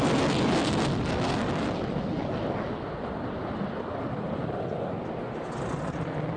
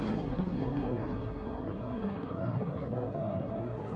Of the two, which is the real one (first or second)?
first